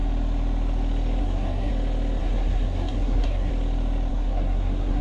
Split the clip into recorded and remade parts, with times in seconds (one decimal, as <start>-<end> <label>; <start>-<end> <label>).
0.0-1.2 recorded; 1.2-1.7 remade; 1.7-2.2 recorded; 2.2-3.5 remade; 3.5-4.1 recorded; 4.1-5.0 remade